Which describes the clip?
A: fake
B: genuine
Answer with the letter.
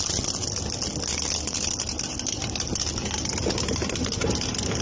B